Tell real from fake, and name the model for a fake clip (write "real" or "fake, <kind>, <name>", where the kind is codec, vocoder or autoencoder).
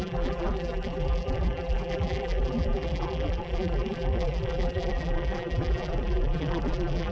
fake, vocoder, BigVGAN v2